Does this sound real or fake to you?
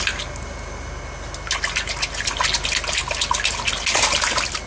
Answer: real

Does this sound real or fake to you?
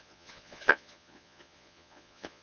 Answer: fake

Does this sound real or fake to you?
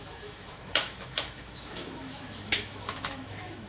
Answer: fake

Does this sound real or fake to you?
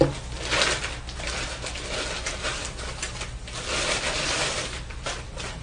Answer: real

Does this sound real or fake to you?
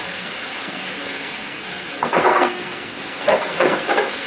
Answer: fake